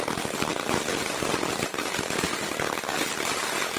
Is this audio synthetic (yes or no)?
no